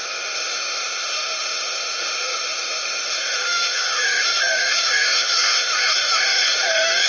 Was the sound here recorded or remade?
remade